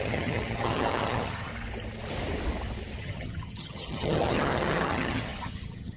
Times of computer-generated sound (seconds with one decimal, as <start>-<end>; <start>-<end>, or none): 0.0-1.5; 3.0-6.0